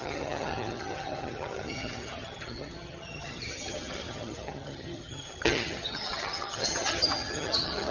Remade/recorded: remade